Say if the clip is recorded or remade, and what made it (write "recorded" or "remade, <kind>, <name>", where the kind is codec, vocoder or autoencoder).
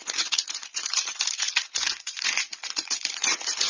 remade, vocoder, Vocos